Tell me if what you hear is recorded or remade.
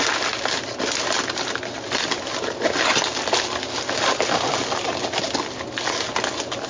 recorded